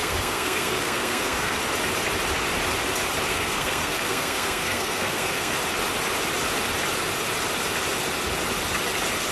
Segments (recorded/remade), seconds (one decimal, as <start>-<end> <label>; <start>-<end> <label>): 0.0-1.6 remade; 1.6-3.3 recorded; 3.3-5.5 remade; 5.5-9.3 recorded